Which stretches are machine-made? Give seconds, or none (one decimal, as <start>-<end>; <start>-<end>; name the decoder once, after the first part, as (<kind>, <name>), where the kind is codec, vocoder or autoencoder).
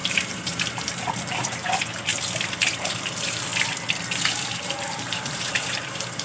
0.0-2.1 (vocoder, BigVGAN v2); 2.9-3.5; 4.3-6.2